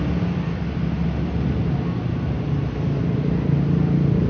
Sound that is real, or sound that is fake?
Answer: real